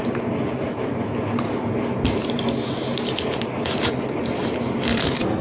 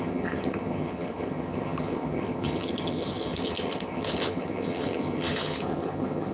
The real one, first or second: first